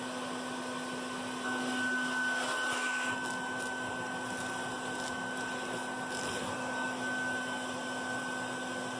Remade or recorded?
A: recorded